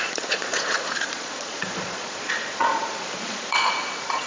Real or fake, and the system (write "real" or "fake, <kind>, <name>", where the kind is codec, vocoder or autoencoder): fake, vocoder, Vocos